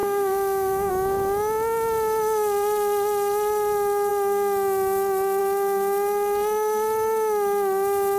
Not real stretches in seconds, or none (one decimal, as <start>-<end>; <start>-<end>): 0.0-0.9